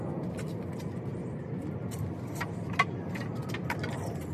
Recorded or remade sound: recorded